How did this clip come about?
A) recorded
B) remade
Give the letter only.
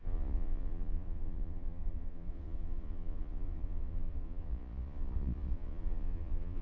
B